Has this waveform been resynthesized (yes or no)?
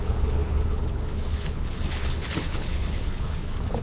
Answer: yes